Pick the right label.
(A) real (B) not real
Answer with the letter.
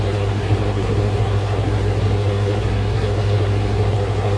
B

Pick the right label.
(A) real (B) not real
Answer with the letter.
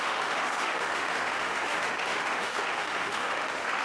B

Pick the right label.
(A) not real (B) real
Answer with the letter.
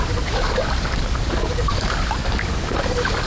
A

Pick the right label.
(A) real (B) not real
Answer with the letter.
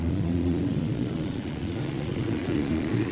B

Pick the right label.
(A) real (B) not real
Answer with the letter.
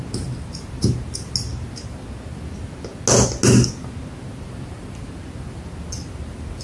A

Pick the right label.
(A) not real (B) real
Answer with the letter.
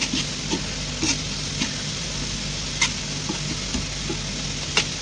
B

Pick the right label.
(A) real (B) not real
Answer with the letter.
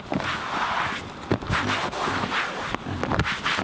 A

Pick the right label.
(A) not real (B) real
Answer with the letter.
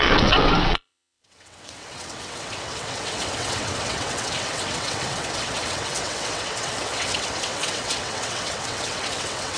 A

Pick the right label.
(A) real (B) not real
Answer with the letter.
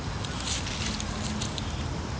A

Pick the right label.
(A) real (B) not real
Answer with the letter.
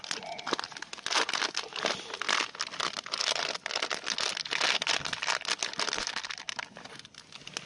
A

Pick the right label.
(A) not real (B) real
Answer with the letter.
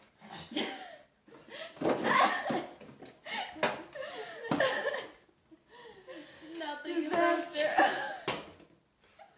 B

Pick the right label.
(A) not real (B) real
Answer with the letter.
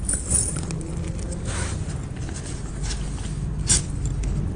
B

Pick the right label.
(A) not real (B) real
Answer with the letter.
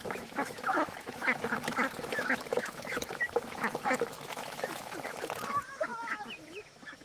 A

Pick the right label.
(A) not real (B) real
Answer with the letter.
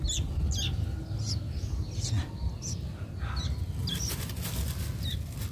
B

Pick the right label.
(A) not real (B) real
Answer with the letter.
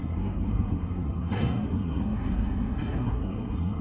A